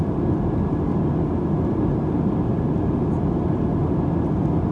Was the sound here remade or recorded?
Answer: recorded